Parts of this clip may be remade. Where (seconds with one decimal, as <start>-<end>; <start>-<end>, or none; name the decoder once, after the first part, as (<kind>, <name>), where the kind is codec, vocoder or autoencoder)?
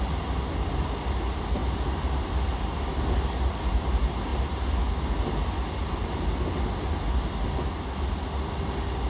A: none